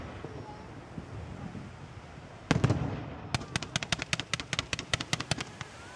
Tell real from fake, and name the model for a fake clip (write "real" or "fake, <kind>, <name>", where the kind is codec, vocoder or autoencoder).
real